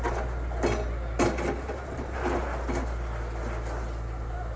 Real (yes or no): yes